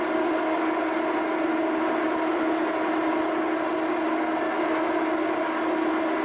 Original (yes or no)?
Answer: yes